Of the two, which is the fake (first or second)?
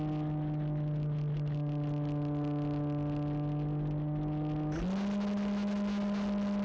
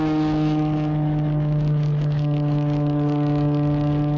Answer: second